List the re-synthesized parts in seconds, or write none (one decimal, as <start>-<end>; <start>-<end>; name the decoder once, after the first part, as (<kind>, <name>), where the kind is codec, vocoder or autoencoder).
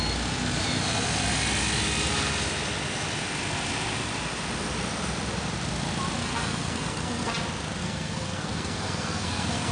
6.2-7.3 (codec, SNAC); 7.8-9.7